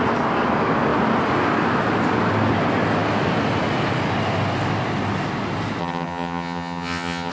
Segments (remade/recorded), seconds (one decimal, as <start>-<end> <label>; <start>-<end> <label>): 0.0-5.8 recorded; 5.8-7.3 remade